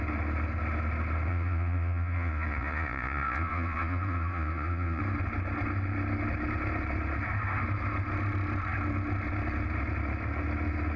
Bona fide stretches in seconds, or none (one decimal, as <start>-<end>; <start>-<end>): 0.0-1.3; 5.0-11.0